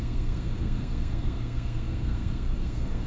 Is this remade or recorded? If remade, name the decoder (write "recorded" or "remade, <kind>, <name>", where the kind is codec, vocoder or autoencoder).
remade, codec, SNAC